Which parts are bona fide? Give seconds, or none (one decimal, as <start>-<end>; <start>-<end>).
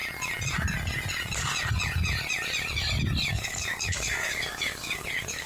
0.0-3.3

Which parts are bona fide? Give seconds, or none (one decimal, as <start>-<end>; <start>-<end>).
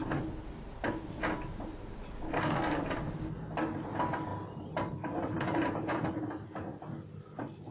0.0-4.3; 5.9-7.7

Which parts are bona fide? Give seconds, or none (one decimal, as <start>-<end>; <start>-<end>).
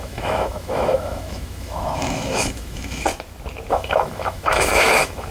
3.1-3.7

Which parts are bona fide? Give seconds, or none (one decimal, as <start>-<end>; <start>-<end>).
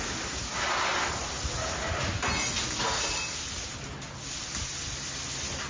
0.0-5.7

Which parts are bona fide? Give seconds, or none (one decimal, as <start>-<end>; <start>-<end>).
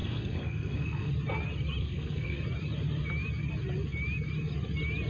1.1-1.8; 2.4-5.1